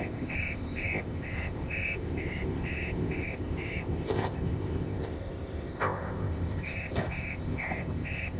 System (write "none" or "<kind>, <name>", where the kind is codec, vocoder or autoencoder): codec, ZipCodec